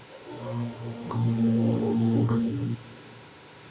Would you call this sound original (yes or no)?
no